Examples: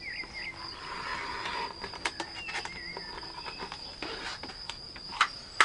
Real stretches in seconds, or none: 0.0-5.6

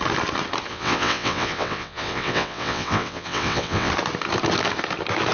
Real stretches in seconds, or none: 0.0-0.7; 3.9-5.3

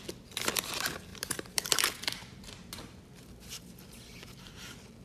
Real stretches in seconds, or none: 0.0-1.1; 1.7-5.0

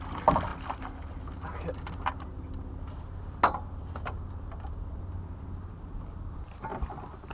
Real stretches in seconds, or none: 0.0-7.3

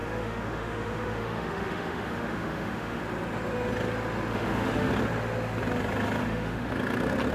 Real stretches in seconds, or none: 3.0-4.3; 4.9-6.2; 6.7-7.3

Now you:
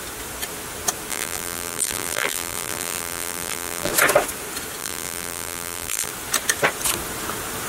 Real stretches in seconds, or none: 0.0-1.1; 3.9-4.8; 6.1-7.7

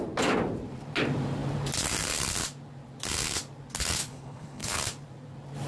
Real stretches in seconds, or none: 0.0-4.0; 4.8-5.7